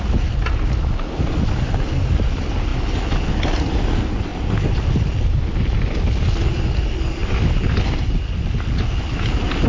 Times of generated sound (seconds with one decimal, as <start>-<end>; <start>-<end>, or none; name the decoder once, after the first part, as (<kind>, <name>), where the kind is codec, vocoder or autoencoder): none